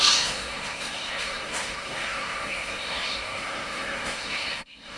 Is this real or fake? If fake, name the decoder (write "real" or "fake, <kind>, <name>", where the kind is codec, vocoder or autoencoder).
fake, codec, SNAC